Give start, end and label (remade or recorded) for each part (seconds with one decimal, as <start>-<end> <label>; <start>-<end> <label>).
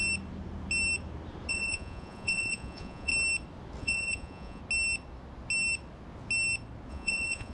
0.0-1.5 recorded; 1.5-3.1 remade; 3.1-3.8 recorded; 3.8-4.6 remade; 4.6-6.9 recorded; 6.9-7.5 remade